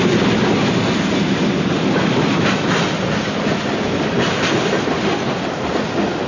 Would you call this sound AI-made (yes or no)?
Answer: no